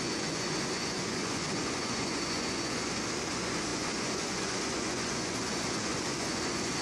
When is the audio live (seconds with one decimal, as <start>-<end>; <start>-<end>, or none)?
none